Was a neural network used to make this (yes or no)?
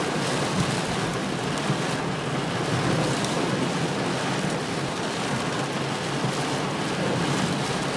no